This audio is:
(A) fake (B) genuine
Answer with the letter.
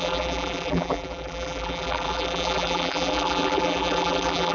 A